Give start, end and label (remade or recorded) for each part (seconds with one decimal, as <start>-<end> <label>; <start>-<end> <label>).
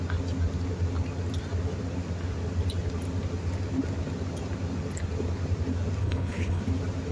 0.0-6.0 recorded; 6.0-6.6 remade; 6.6-7.1 recorded